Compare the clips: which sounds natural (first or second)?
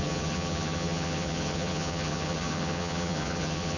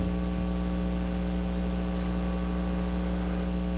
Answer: second